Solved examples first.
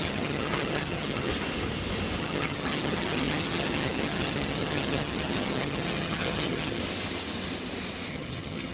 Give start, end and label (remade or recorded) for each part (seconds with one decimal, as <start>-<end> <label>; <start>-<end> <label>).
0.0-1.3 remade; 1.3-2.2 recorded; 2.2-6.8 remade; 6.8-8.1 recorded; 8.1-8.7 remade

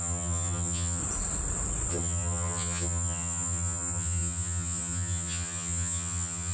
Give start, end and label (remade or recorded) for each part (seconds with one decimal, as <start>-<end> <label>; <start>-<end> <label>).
0.0-1.0 remade; 1.0-1.9 recorded; 1.9-6.5 remade

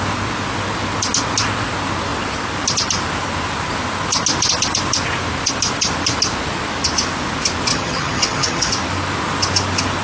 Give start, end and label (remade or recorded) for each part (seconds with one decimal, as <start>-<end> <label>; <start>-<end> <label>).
0.0-7.7 recorded; 7.7-8.7 remade; 8.7-10.0 recorded

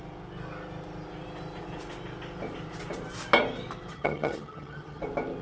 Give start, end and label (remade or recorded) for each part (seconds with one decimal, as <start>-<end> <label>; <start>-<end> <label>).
0.0-3.9 recorded; 3.9-5.0 remade; 5.0-5.4 recorded

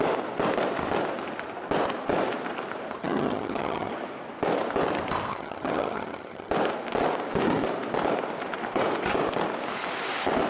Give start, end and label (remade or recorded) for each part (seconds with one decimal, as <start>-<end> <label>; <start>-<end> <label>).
0.0-3.0 recorded; 3.0-3.9 remade; 3.9-5.3 recorded; 5.3-6.5 remade; 6.5-10.5 recorded

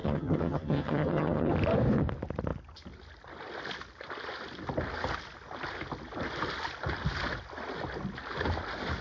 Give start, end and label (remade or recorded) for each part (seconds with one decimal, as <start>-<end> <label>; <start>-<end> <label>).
0.0-1.5 remade; 1.5-9.0 recorded

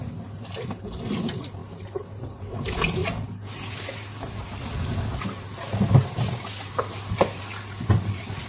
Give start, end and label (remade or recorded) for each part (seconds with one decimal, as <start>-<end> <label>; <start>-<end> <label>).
0.0-8.5 recorded

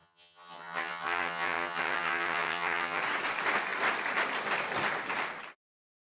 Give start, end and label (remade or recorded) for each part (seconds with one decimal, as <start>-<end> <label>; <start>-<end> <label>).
0.0-3.0 remade; 3.0-6.0 recorded